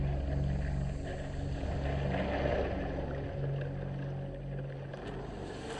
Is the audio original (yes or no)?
yes